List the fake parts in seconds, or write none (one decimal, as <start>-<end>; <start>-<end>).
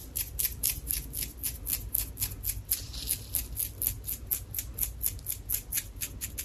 none